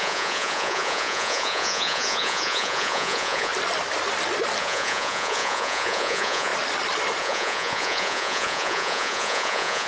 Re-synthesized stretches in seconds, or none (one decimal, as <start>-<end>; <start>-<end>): 0.0-3.5; 4.6-6.5; 7.2-9.9